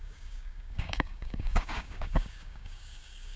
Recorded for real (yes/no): no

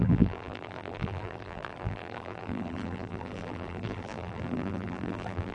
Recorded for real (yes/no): no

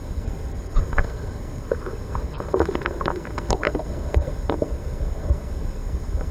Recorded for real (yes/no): no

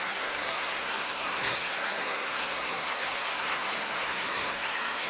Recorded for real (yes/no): no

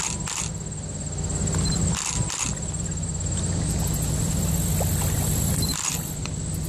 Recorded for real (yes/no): yes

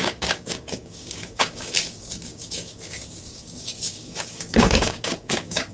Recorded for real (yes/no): no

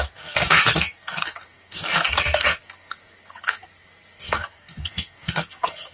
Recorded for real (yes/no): no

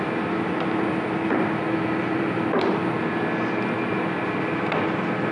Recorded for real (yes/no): no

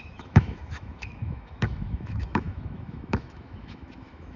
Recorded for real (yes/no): no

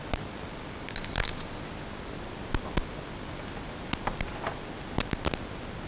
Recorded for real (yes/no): yes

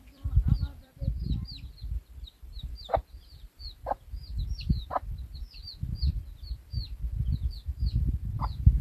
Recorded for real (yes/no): no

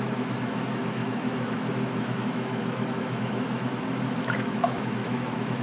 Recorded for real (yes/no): no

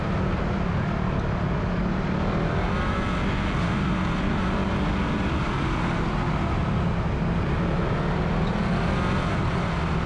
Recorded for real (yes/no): yes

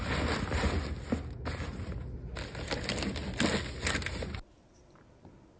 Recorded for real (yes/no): yes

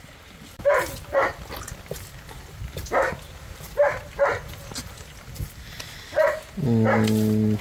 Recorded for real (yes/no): yes